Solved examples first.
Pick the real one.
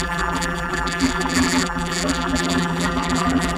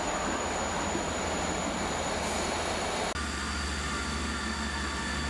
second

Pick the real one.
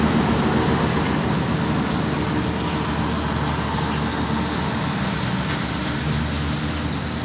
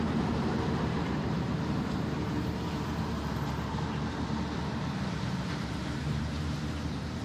first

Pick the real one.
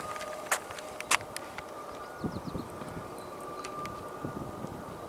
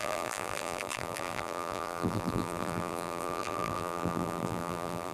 first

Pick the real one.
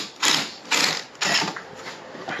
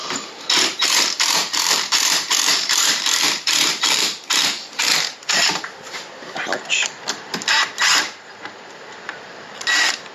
first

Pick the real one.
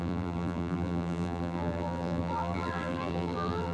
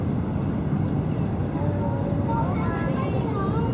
second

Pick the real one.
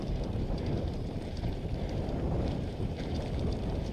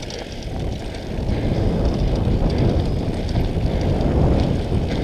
second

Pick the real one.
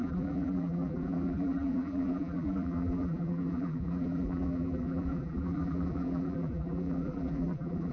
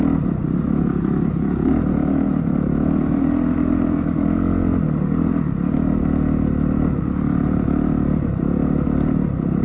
second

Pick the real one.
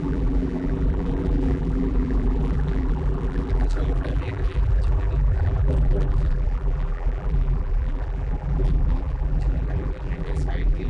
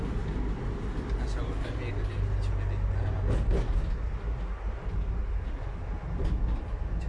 second